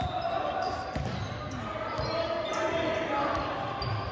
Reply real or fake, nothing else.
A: real